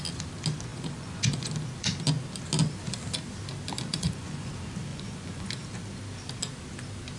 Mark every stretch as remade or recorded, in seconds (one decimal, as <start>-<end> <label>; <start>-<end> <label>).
0.0-0.7 recorded; 0.7-1.5 remade; 1.5-3.9 recorded; 3.9-4.5 remade; 4.5-4.9 recorded; 4.9-5.5 remade; 5.5-7.2 recorded